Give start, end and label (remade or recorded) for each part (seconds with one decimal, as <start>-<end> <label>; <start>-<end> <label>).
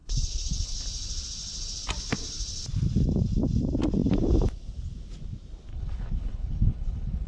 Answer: 0.0-0.8 remade; 0.8-5.7 recorded; 5.7-7.3 remade